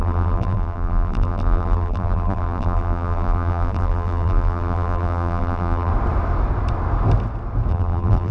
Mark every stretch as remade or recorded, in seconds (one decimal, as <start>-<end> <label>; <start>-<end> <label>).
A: 0.0-5.9 remade; 5.9-7.7 recorded; 7.7-8.3 remade